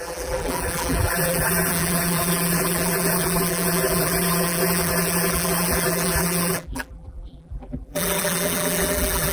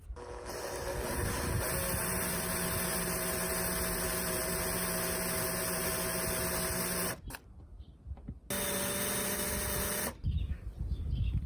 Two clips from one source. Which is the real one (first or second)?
second